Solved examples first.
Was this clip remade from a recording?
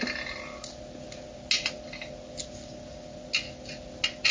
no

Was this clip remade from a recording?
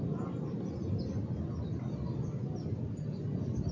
no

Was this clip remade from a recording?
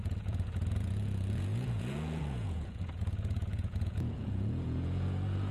yes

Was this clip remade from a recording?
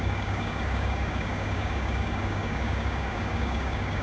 yes